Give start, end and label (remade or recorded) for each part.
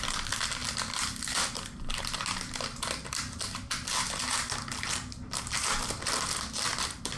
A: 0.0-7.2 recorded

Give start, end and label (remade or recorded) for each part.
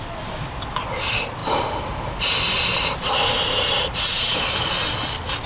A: 0.0-1.4 recorded; 1.4-4.7 remade; 4.7-5.5 recorded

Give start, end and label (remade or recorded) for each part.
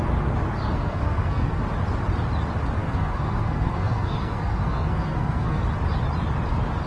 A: 0.0-0.6 recorded; 0.6-1.6 remade; 1.6-2.8 recorded; 2.8-5.6 remade; 5.6-6.9 recorded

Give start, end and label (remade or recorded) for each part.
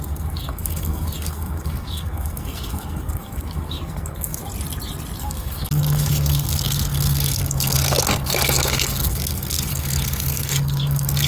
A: 0.0-4.4 remade; 4.4-5.2 recorded; 5.2-11.3 remade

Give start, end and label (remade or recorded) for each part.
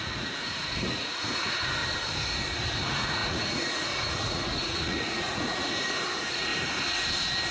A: 0.0-1.8 remade; 1.8-2.8 recorded; 2.8-6.5 remade; 6.5-7.5 recorded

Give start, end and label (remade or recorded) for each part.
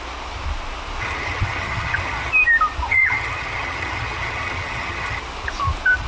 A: 0.0-1.0 recorded; 1.0-2.3 remade; 2.3-2.9 recorded; 2.9-5.2 remade; 5.2-6.1 recorded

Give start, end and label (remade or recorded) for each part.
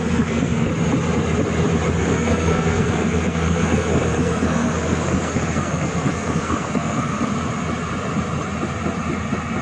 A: 0.0-0.7 remade; 0.7-2.0 recorded; 2.0-7.3 remade; 7.3-9.6 recorded